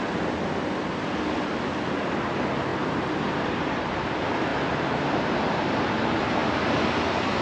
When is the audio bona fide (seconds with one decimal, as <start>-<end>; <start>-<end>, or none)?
0.0-2.7; 3.9-4.5; 5.6-7.4